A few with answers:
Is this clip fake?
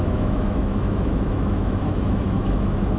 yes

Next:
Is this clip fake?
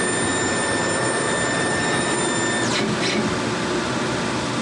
no